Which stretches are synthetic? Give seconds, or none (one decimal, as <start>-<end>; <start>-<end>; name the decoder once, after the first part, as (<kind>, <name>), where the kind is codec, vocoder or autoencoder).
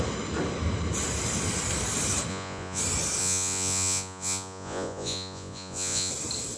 2.3-2.8 (vocoder, Vocos); 3.2-6.1